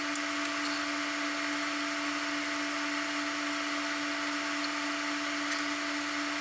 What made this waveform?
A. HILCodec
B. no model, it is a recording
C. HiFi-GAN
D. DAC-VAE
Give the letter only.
B